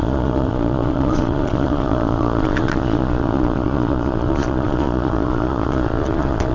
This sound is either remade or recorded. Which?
remade